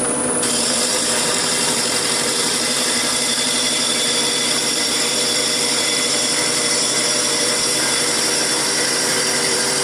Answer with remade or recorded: remade